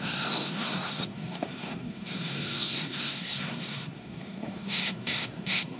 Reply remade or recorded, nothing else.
remade